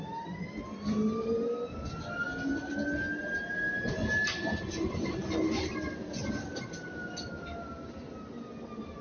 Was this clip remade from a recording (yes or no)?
no